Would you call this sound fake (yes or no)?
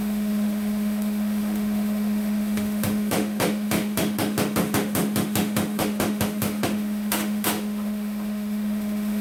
yes